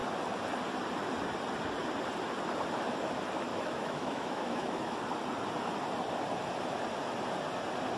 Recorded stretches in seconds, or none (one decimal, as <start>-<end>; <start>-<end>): 0.0-3.5; 5.0-8.0